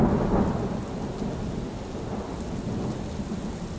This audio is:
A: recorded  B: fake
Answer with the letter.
A